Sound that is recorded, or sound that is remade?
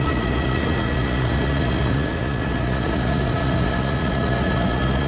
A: remade